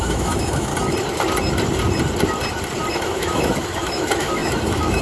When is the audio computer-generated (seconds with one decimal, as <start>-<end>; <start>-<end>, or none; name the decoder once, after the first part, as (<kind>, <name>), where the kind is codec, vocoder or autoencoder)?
0.0-0.7 (autoencoder, DAC-VAE); 2.9-5.0